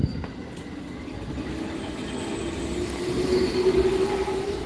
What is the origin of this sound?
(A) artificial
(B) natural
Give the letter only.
B